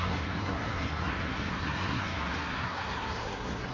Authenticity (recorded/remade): remade